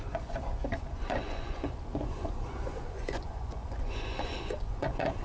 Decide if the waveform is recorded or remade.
remade